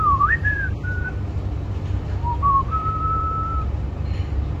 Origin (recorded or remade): remade